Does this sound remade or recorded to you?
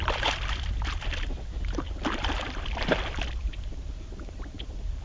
recorded